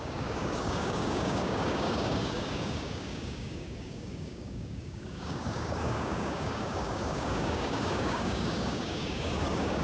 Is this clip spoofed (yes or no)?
yes